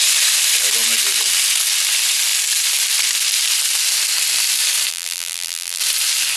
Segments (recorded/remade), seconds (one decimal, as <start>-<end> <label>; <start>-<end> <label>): 0.0-4.9 recorded; 4.9-5.8 remade; 5.8-6.4 recorded